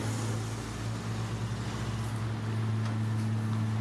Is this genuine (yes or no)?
yes